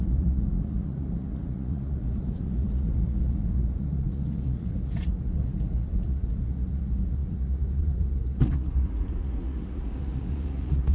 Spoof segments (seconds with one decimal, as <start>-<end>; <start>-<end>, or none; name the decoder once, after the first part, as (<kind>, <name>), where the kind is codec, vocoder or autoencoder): 0.0-10.9 (vocoder, Vocos)